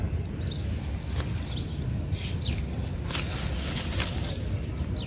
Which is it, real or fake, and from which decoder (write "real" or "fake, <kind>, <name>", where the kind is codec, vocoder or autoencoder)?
real